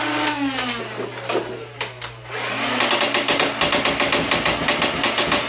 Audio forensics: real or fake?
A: real